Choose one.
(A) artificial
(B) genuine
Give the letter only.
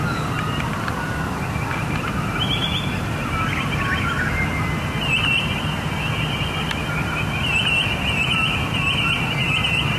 B